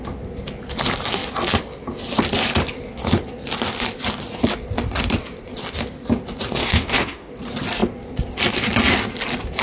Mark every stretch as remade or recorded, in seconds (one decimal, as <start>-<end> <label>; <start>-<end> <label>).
0.0-6.6 recorded; 6.6-7.3 remade; 7.3-9.6 recorded